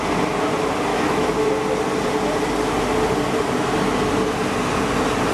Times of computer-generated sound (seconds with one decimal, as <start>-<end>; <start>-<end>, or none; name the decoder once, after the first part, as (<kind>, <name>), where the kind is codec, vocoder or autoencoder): 0.9-1.5 (autoencoder, DAC-VAE)